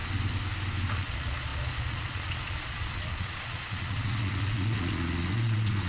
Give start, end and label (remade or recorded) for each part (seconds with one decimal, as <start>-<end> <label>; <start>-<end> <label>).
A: 0.0-0.9 recorded; 0.9-5.9 remade